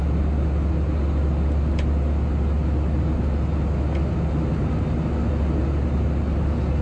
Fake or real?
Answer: real